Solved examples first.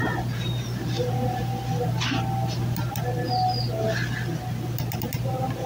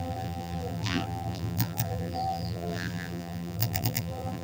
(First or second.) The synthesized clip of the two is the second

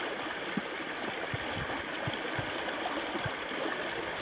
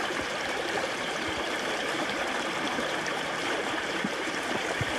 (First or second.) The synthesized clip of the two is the second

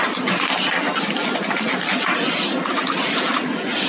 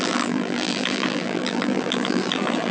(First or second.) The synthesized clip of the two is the second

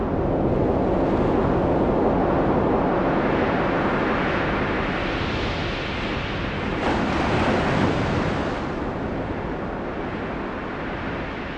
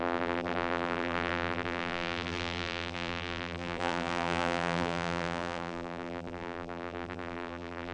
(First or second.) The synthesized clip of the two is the second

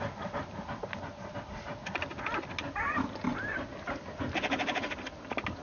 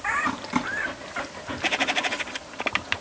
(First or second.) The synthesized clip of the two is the second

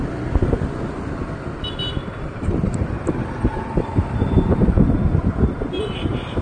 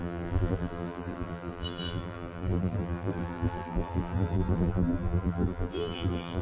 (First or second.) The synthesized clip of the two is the second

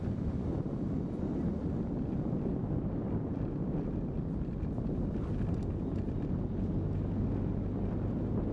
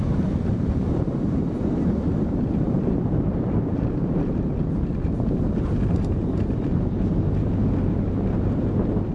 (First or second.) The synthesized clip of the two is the second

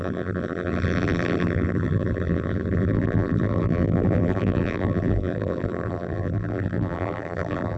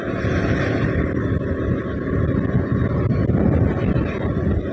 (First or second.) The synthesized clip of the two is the first